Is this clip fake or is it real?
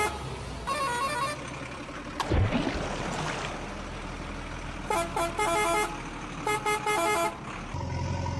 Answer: real